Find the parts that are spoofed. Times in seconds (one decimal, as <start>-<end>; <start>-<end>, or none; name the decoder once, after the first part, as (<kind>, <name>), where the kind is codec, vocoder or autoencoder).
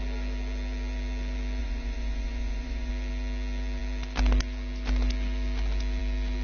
1.6-2.9 (vocoder, Vocos)